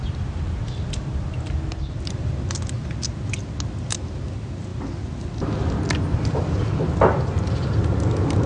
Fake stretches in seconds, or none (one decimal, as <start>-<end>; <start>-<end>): none